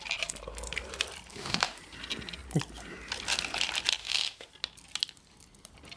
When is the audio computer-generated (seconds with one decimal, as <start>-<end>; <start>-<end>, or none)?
1.3-1.8; 4.0-4.5